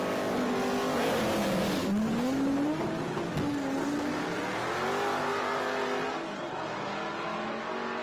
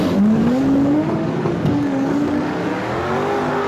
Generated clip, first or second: second